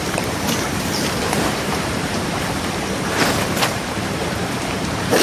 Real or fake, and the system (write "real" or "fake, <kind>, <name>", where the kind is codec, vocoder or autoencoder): fake, vocoder, BigVGAN v2